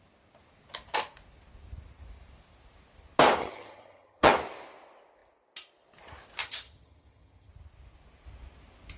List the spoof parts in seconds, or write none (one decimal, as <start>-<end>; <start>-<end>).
3.4-4.3; 6.4-7.5